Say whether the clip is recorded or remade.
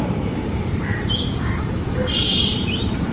remade